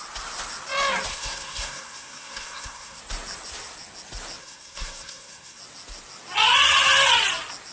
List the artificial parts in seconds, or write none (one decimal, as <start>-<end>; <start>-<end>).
1.1-3.0; 4.4-5.6